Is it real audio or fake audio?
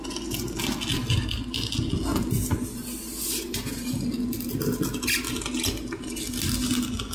real